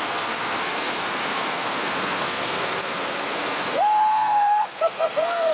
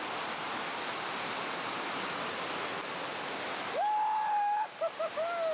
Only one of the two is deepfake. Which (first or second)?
first